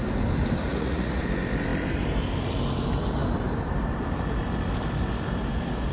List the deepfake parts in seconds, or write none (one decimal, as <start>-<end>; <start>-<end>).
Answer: 0.7-1.2